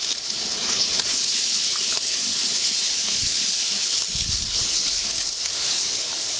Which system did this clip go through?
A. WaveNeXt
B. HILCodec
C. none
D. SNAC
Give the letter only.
B